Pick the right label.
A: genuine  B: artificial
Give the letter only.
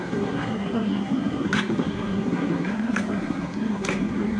B